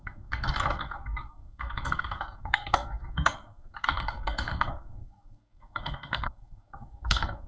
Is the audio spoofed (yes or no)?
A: yes